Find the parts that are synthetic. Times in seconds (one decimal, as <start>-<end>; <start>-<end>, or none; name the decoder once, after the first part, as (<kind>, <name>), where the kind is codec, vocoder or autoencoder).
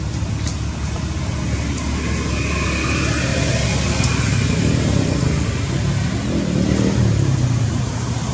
none